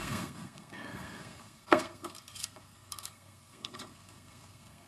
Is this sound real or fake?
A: fake